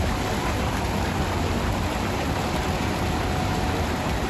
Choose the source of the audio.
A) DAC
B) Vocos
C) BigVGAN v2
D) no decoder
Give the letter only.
C